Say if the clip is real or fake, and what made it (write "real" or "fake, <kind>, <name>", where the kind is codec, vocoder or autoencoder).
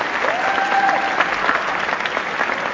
real